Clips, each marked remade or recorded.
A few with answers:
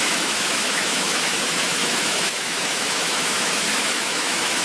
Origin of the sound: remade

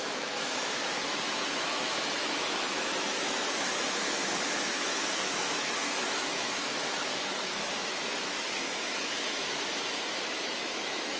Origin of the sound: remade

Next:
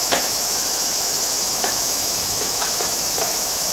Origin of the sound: remade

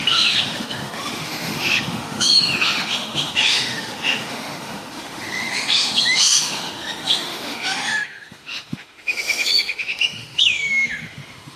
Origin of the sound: remade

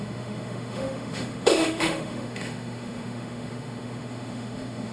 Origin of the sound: remade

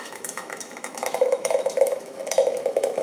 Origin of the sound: remade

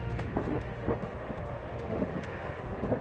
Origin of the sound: remade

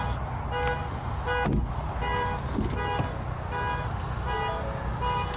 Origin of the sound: recorded